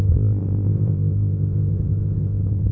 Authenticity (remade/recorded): remade